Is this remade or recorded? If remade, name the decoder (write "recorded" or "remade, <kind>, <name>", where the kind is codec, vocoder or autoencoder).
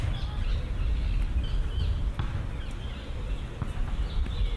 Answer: recorded